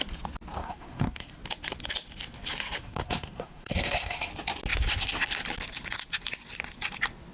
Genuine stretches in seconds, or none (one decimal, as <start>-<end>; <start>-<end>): 0.0-0.6; 1.4-2.8; 4.3-7.3